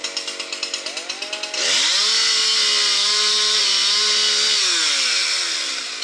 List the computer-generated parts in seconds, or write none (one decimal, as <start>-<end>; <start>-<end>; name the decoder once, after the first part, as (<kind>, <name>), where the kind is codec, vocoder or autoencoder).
none